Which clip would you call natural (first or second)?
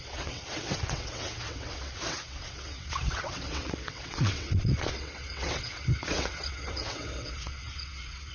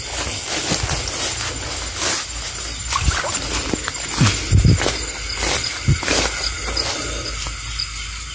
second